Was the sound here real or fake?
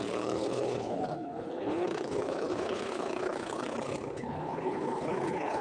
fake